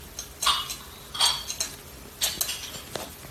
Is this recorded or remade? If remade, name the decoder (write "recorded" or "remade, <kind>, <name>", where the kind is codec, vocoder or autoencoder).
recorded